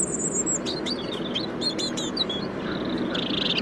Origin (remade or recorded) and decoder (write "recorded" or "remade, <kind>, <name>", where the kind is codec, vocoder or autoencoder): recorded